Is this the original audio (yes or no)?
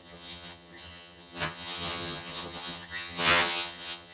no